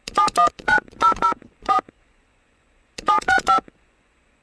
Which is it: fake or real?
fake